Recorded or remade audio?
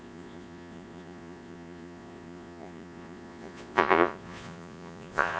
remade